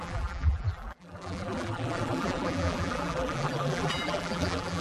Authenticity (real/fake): fake